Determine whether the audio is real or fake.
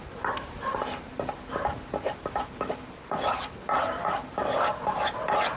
real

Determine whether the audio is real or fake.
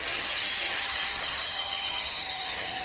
fake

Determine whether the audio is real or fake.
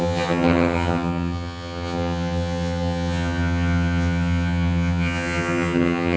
fake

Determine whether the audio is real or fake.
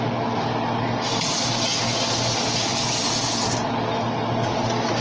real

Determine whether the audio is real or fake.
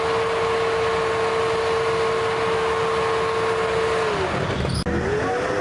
real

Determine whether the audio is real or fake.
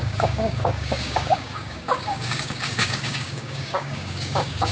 fake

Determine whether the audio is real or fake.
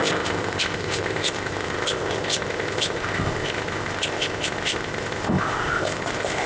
fake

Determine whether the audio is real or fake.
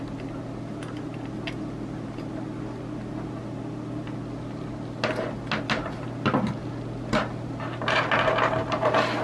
real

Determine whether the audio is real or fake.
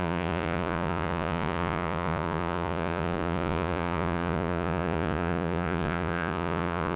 fake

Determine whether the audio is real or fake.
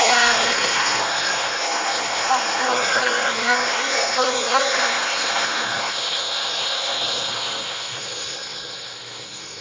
fake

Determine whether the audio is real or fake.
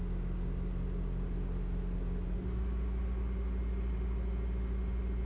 real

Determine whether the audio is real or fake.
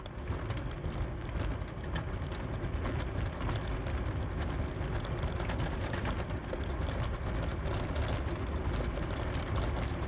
real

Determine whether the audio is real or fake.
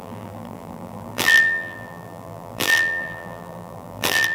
fake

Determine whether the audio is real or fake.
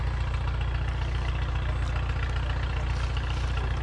real